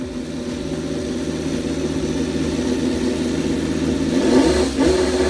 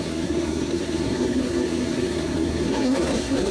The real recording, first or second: first